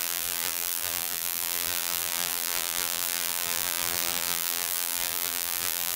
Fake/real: fake